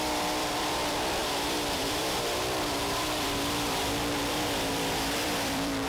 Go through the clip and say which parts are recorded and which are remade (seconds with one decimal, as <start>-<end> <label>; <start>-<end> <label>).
0.0-5.9 remade